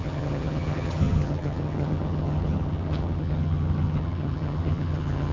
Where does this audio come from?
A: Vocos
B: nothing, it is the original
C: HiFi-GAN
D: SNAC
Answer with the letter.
C